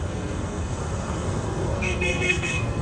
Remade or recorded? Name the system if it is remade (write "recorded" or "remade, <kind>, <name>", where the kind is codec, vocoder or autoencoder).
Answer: remade, codec, SNAC